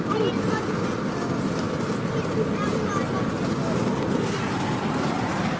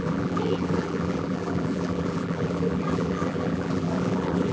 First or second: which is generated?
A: second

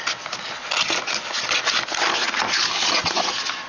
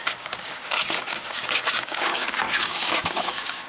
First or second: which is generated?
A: second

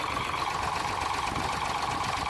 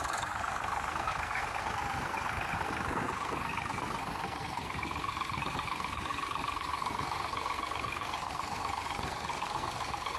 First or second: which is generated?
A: second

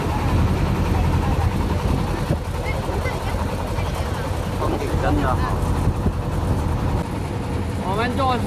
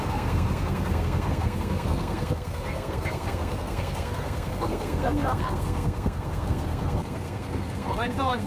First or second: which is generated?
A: second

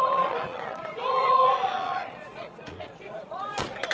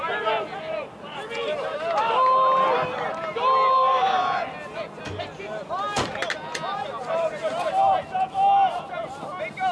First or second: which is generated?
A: first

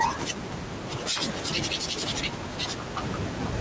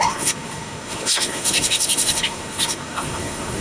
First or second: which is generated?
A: second